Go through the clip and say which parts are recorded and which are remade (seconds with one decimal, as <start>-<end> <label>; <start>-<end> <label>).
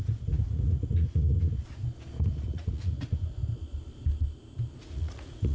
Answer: 0.0-1.2 remade; 1.2-2.4 recorded; 2.4-3.4 remade; 3.4-4.8 recorded; 4.8-5.5 remade